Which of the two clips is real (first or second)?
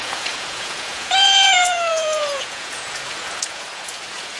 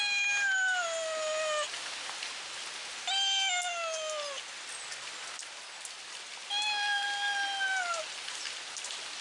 second